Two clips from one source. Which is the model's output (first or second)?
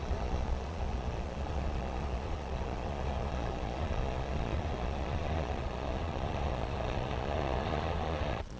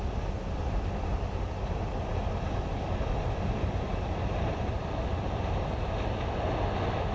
first